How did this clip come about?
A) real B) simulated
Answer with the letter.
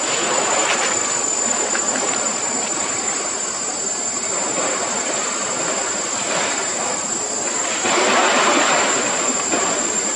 B